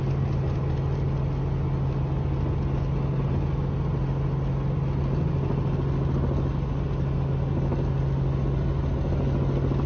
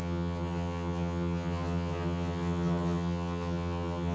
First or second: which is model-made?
second